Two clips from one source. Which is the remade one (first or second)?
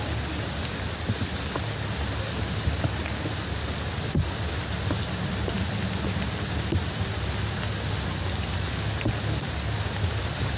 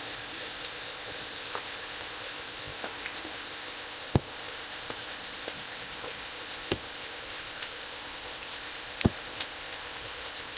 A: second